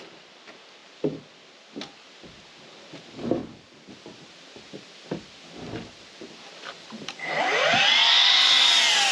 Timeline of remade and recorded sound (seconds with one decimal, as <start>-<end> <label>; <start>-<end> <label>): 0.0-3.4 remade; 3.4-3.9 recorded; 3.9-9.1 remade